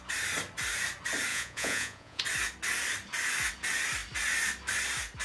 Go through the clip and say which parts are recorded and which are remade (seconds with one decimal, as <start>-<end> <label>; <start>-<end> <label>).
0.0-1.3 recorded; 1.3-2.2 remade; 2.2-5.2 recorded